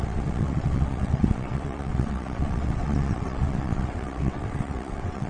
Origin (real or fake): fake